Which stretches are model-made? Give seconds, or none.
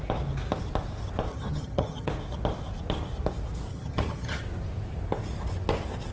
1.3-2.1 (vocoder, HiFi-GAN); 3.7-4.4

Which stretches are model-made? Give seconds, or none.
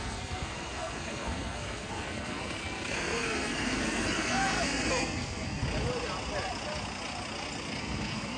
0.0-5.6 (codec, SNAC); 7.8-8.4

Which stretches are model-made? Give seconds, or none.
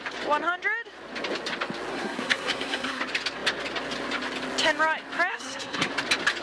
1.9-3.0 (codec, SNAC); 5.3-5.9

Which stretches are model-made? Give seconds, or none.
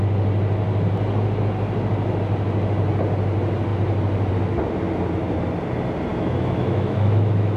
6.1-7.6 (autoencoder, DAC-VAE)